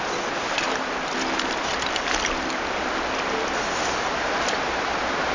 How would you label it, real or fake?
real